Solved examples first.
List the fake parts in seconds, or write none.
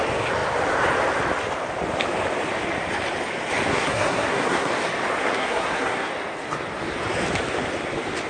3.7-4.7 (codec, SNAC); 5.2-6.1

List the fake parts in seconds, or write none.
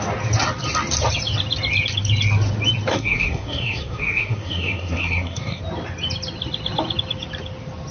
2.9-5.6 (codec, SNAC)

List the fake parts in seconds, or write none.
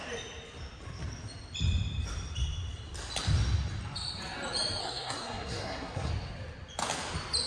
4.8-6.1 (codec, SNAC)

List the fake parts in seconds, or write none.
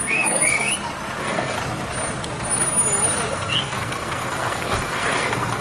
0.0-0.7 (codec, SNAC); 1.2-1.6; 3.3-5.6